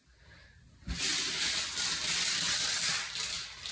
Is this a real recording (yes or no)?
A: yes